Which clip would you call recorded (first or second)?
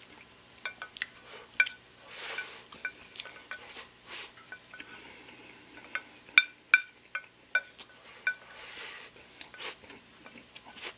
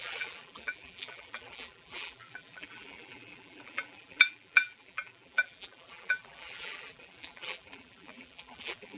first